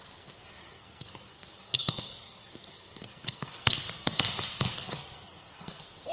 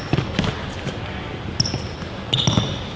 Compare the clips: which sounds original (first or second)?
second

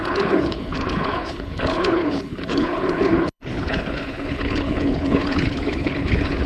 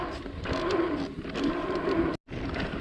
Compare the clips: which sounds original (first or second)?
second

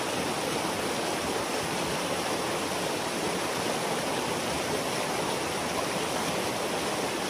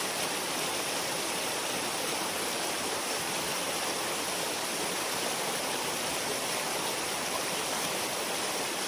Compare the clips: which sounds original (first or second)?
first